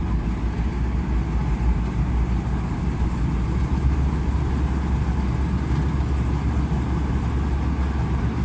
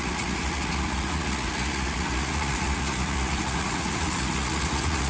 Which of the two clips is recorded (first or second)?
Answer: first